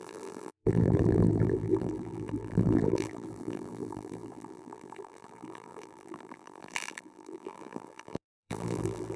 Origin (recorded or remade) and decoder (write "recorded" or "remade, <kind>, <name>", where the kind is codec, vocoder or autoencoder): remade, vocoder, BigVGAN v2